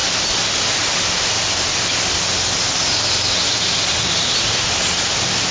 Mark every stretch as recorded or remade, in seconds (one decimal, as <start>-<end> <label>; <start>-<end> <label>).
0.0-5.5 recorded

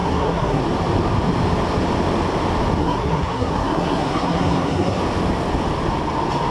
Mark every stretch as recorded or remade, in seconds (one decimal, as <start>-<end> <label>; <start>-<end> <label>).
0.0-0.6 remade; 0.6-2.8 recorded; 2.8-5.0 remade; 5.0-6.5 recorded

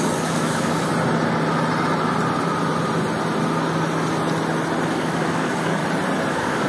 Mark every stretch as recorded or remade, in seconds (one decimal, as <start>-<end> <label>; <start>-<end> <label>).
0.0-0.9 remade; 0.9-4.9 recorded; 4.9-5.8 remade; 5.8-6.3 recorded; 6.3-6.7 remade

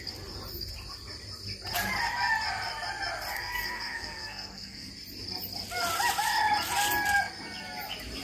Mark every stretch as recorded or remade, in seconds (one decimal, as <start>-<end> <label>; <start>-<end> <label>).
0.0-3.3 recorded; 3.3-4.9 remade; 4.9-8.2 recorded

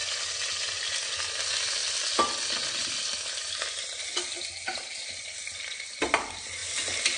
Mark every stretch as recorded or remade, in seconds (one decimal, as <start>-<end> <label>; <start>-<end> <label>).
0.0-7.2 recorded

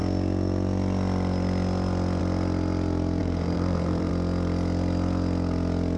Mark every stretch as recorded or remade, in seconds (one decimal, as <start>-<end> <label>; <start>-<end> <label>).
0.0-3.2 recorded; 3.2-4.1 remade; 4.1-6.0 recorded

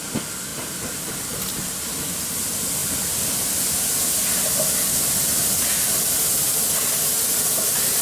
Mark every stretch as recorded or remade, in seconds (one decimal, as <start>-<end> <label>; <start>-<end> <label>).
0.0-8.0 recorded

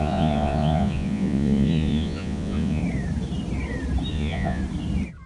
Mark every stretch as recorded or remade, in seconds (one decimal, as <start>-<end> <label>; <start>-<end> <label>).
0.0-2.8 remade; 2.8-4.1 recorded; 4.1-4.6 remade; 4.6-5.3 recorded